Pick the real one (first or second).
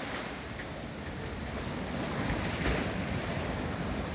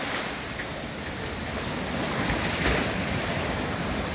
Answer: first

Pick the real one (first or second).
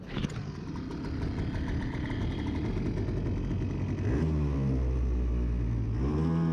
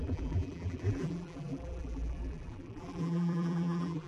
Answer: first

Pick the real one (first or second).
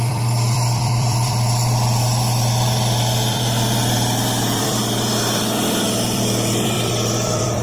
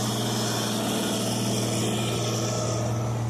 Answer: second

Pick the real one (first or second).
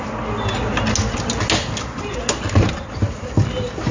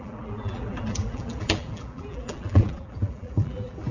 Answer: first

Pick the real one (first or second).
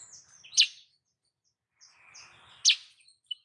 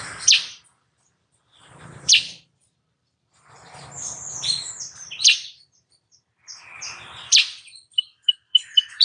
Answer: first